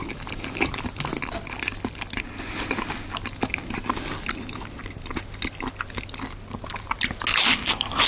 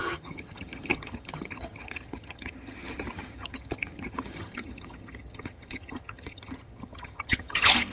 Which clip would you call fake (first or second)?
second